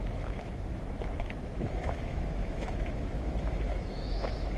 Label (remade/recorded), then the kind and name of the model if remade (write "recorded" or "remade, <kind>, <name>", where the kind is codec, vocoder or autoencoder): remade, autoencoder, DAC-VAE